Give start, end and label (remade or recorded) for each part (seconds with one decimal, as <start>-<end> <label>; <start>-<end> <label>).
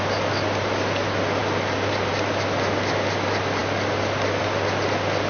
0.0-5.3 recorded